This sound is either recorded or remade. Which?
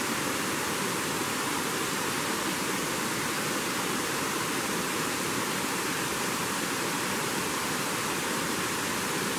remade